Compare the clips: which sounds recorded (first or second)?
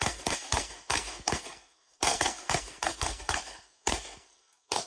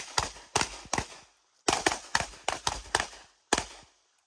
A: second